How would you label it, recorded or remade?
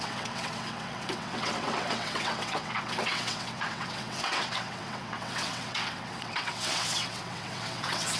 remade